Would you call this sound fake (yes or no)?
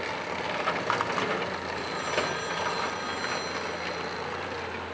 no